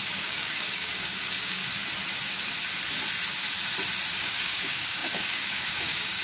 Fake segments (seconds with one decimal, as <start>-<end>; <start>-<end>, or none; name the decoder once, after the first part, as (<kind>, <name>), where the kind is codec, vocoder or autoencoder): 0.0-1.6 (codec, DAC); 4.1-6.2